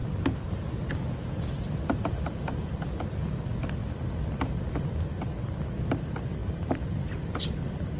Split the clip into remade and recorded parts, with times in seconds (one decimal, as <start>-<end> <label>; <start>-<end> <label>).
0.0-8.0 recorded